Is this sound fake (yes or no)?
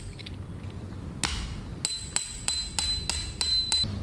no